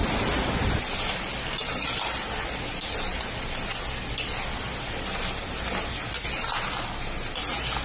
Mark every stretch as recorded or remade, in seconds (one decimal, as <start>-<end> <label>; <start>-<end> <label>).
0.0-7.8 recorded